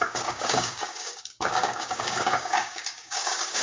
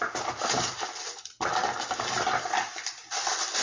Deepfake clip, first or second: first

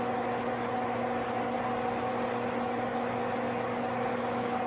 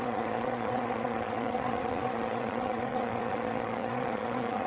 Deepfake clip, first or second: second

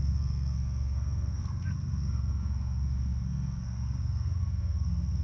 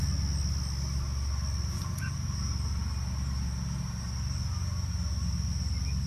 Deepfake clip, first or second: first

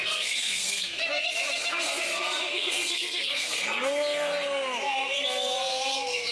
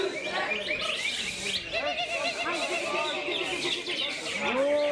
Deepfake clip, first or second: first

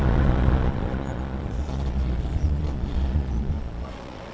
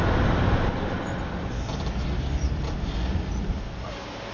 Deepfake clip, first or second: first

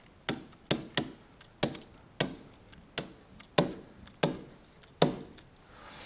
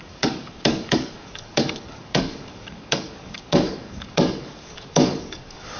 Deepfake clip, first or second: second